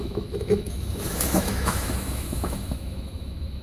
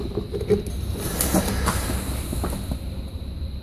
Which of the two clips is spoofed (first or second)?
first